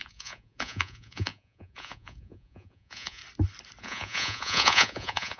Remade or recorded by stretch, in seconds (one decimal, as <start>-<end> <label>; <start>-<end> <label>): 0.0-3.2 remade; 3.2-3.8 recorded; 3.8-5.4 remade